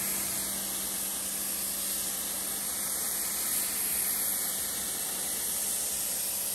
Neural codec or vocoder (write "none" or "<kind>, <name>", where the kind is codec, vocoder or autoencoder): none